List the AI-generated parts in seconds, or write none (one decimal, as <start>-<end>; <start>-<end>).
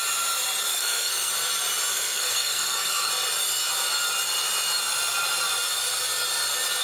0.7-1.3; 1.9-3.1